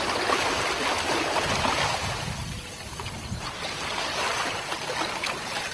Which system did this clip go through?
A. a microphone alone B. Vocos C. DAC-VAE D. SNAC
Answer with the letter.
A